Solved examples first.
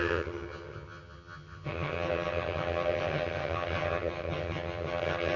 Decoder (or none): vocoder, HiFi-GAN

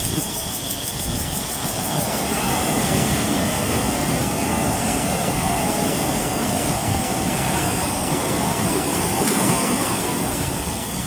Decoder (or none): codec, SNAC